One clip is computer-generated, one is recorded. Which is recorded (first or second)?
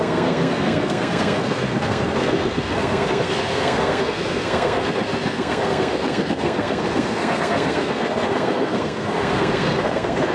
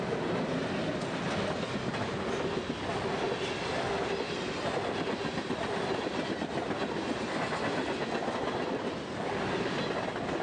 second